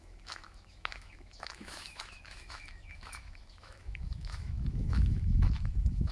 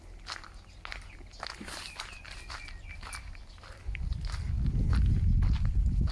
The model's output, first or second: first